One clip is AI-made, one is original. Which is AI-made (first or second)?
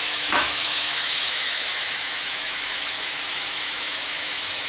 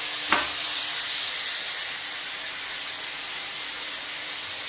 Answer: first